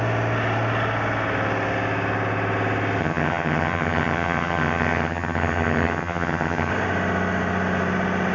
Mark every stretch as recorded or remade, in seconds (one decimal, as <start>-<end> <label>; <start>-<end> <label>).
0.0-3.0 recorded; 3.0-6.7 remade; 6.7-8.3 recorded